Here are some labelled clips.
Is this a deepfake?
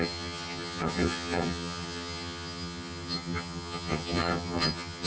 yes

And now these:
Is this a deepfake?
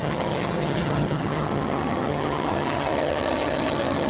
yes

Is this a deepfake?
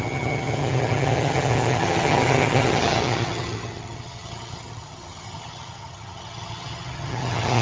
yes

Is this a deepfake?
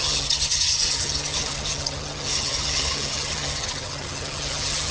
yes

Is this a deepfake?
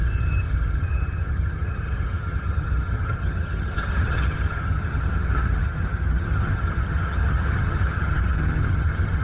yes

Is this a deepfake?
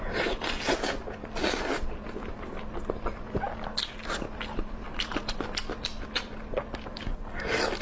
no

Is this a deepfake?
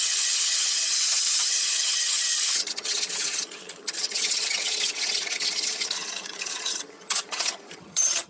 yes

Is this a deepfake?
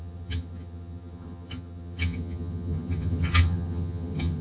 yes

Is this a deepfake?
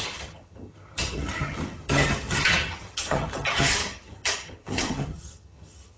yes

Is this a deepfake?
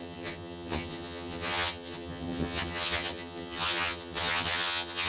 yes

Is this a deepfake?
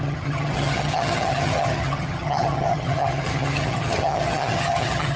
yes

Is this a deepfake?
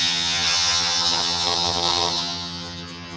yes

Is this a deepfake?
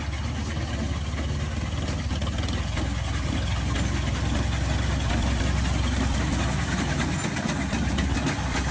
no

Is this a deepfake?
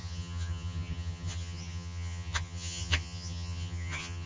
yes